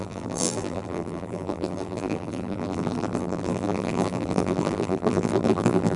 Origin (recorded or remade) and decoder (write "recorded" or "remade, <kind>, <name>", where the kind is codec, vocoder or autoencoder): remade, vocoder, BigVGAN v2